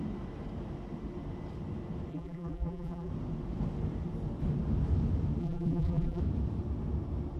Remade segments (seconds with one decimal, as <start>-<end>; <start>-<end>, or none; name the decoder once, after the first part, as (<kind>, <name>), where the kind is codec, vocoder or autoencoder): 2.1-3.1 (vocoder, BigVGAN v2); 5.4-6.2